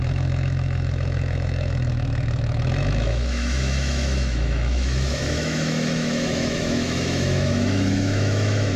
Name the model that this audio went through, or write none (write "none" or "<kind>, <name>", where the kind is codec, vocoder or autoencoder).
autoencoder, DAC-VAE